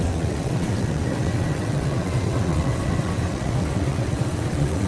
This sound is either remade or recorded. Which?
remade